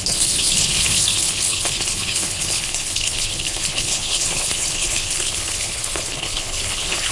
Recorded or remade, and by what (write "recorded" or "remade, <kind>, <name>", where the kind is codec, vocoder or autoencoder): remade, codec, HILCodec